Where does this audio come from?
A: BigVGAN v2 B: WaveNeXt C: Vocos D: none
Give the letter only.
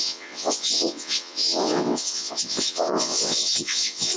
B